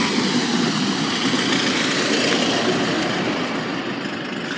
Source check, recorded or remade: recorded